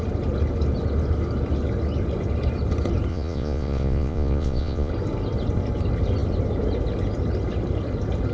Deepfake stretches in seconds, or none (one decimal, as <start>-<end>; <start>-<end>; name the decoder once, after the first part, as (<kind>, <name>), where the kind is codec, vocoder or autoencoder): 3.1-4.9 (vocoder, Vocos)